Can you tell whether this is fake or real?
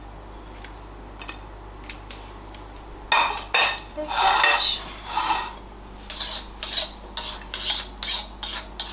real